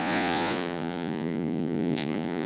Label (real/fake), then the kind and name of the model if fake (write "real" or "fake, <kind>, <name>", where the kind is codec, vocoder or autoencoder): fake, vocoder, Vocos